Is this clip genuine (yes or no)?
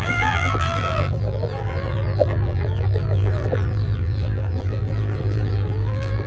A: no